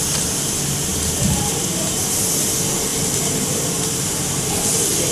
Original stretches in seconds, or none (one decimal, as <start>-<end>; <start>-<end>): 0.0-0.9; 2.5-2.9; 4.5-5.1